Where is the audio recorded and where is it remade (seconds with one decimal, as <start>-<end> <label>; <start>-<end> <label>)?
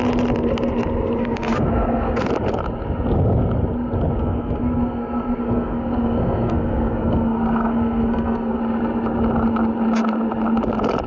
0.0-1.2 recorded; 1.2-2.3 remade; 2.3-4.2 recorded; 4.2-8.6 remade; 8.6-11.1 recorded